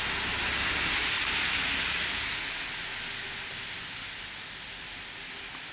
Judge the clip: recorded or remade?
recorded